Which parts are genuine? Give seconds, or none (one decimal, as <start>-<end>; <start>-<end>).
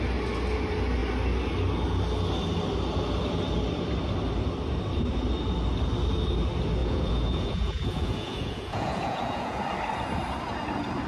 0.0-6.8; 9.6-11.1